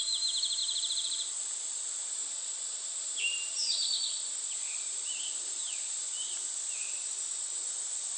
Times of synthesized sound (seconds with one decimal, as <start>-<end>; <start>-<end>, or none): 0.6-1.3; 2.2-6.1